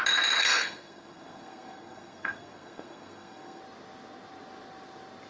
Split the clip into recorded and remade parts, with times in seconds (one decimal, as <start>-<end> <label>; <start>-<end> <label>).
0.0-0.4 recorded; 0.4-3.6 remade; 3.6-5.3 recorded